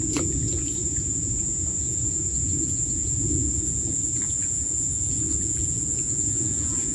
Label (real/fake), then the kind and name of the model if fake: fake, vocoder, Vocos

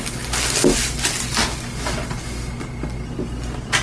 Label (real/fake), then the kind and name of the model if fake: real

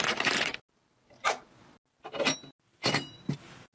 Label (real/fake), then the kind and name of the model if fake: real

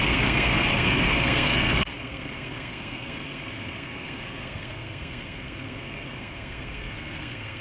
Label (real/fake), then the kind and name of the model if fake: fake, codec, SNAC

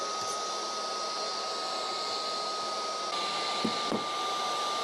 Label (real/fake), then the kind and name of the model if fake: real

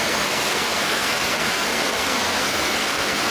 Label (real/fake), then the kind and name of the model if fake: fake, codec, SNAC